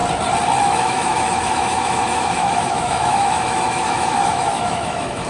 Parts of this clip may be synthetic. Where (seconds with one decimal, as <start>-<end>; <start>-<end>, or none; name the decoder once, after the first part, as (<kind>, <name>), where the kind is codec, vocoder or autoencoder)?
0.6-5.3 (autoencoder, DAC-VAE)